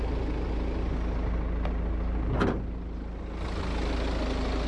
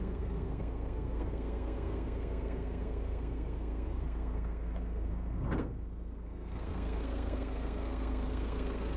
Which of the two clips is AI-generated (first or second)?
second